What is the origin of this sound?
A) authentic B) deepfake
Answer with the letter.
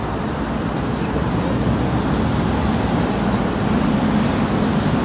A